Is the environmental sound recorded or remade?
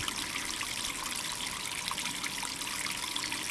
recorded